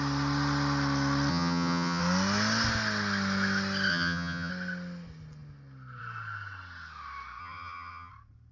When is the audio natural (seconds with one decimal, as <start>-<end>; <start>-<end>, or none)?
0.0-1.3; 2.0-3.9; 4.5-7.4; 8.1-8.5